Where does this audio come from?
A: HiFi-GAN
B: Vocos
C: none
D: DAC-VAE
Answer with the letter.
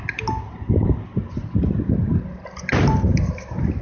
C